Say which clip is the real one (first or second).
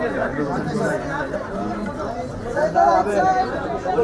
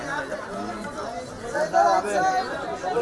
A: second